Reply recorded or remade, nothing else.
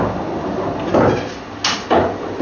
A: recorded